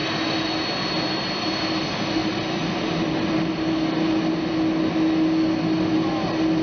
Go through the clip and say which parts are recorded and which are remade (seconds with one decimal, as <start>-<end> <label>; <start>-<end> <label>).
0.0-6.6 recorded